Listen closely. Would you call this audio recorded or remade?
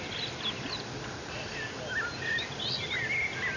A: recorded